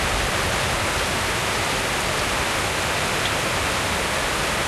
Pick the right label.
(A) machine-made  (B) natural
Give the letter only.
B